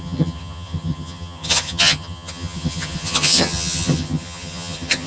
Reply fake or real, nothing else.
fake